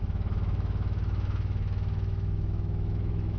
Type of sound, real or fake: fake